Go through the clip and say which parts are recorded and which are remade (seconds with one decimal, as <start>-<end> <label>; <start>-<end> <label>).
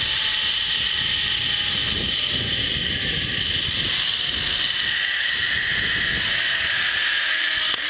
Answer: 0.0-7.9 recorded